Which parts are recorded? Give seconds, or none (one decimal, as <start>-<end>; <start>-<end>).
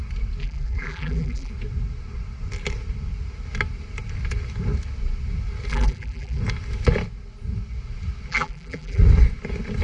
0.0-0.4; 1.5-5.7; 6.4-8.3; 9.0-9.8